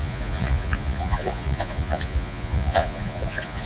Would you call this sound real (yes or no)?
no